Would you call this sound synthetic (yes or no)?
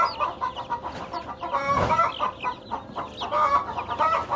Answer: no